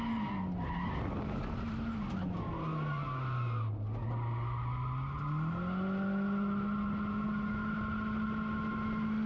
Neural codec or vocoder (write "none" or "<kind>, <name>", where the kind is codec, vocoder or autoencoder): none